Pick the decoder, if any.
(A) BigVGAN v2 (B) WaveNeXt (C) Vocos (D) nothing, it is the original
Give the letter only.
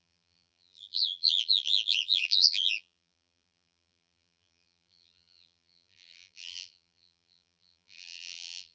A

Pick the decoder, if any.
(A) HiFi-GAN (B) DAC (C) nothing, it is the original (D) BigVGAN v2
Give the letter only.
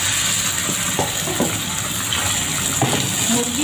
C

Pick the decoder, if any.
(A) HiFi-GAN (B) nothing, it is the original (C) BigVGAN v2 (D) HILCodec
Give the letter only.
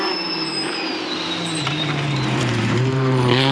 C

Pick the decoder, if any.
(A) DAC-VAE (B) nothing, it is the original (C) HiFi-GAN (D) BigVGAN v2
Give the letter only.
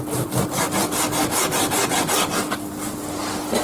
B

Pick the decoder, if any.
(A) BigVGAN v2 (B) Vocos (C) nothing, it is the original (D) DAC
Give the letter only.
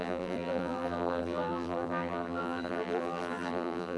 A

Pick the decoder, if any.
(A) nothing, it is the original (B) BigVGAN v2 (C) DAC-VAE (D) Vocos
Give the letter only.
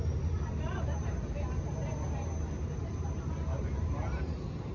B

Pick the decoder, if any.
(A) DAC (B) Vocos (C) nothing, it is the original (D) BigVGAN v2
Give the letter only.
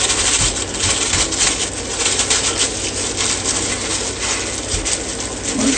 C